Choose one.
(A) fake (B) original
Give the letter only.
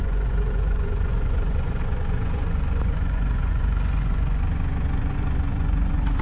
A